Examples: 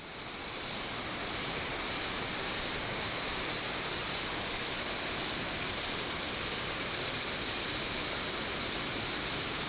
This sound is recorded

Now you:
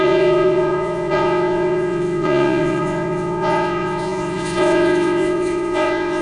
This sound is remade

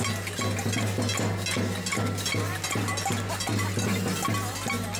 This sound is recorded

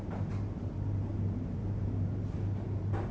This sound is recorded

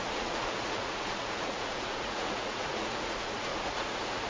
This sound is remade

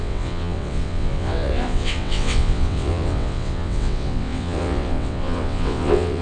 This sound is remade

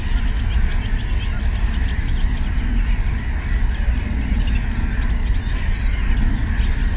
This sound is recorded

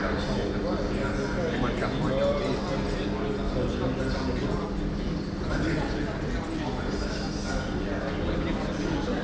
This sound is recorded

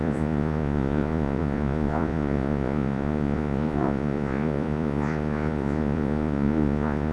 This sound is remade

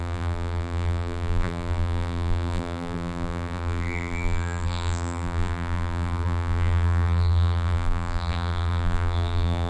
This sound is remade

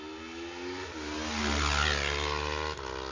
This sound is recorded